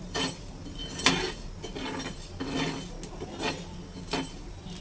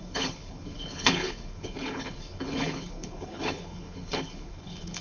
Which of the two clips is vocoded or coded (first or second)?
second